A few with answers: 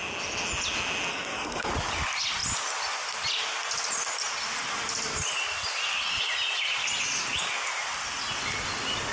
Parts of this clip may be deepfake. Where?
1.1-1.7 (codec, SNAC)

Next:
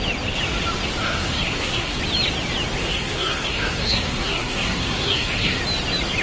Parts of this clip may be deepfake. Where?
1.0-2.0 (codec, SNAC); 2.8-5.6

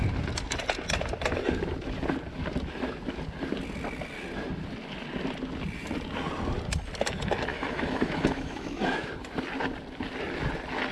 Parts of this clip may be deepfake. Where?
7.5-9.1 (autoencoder, DAC-VAE)

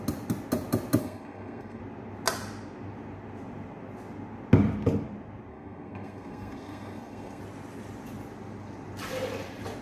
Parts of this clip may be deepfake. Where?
1.0-1.8 (codec, SNAC); 5.5-7.4

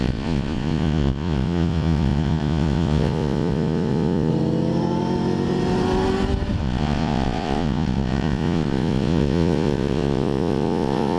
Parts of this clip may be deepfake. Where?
0.0-4.3 (vocoder, Vocos); 6.6-11.2

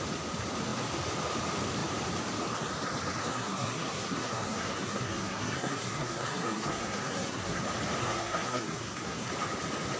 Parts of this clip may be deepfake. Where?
3.2-7.6 (codec, SNAC); 8.0-9.3